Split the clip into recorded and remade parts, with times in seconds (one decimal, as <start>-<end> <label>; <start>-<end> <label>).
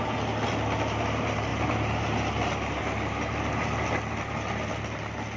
0.0-5.4 recorded